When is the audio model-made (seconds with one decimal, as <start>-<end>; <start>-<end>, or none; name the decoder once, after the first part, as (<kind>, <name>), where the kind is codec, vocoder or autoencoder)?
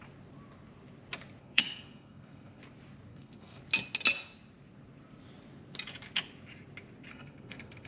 1.4-2.6 (codec, SNAC); 3.1-3.6; 7.1-7.9